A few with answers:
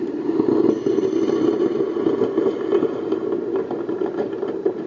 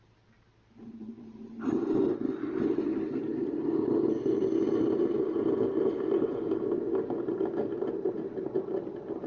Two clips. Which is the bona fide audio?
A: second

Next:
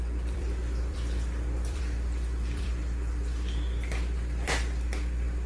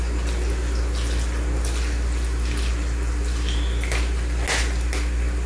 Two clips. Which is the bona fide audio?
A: second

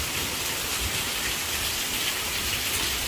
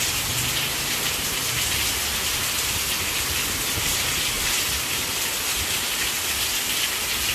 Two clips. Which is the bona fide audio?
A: second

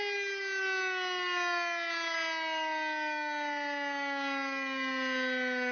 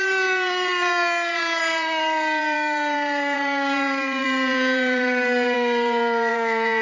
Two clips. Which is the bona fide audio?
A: first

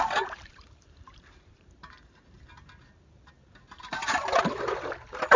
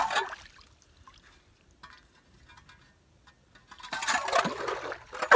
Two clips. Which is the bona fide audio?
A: second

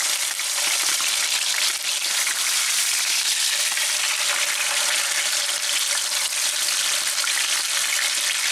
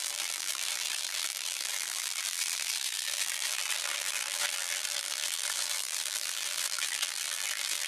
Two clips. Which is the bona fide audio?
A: first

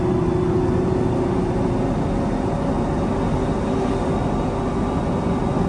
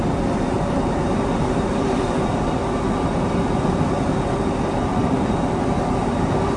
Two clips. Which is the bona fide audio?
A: first